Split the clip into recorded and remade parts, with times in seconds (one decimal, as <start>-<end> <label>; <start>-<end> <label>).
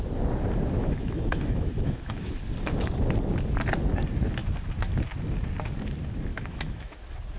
0.0-0.8 recorded; 0.8-2.3 remade; 2.3-6.3 recorded; 6.3-6.9 remade; 6.9-7.4 recorded